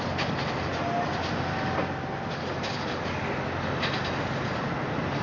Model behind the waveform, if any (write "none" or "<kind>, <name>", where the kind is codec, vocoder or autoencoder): none